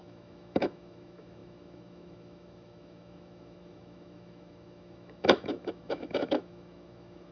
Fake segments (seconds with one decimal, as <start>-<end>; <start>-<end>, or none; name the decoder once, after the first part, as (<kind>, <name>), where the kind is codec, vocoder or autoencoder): 0.0-7.3 (autoencoder, DAC-VAE)